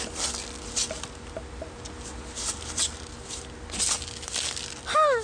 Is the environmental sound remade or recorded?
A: recorded